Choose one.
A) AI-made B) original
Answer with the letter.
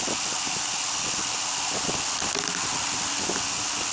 B